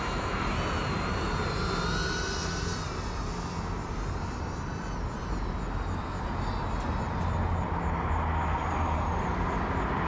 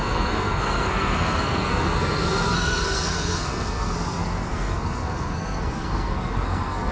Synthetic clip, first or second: second